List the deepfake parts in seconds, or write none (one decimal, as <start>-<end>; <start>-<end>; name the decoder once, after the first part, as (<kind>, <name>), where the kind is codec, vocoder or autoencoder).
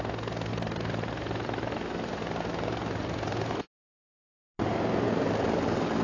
0.5-3.8 (vocoder, BigVGAN v2); 4.4-5.3